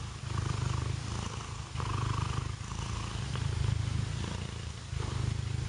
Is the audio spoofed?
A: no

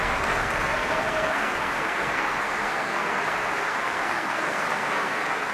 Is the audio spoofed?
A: yes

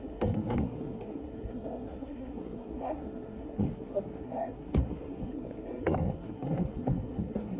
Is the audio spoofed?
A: yes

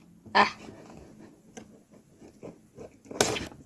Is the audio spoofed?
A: no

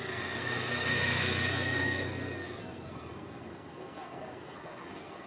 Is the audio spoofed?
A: yes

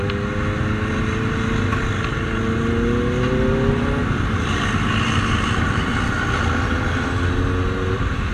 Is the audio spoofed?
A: no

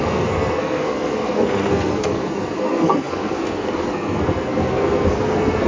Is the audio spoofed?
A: yes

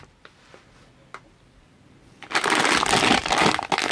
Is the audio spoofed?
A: no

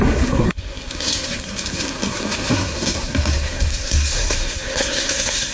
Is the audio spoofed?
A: yes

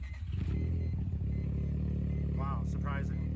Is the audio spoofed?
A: no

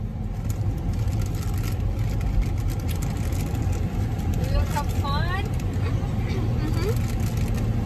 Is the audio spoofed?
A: no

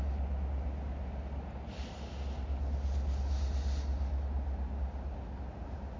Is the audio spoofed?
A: no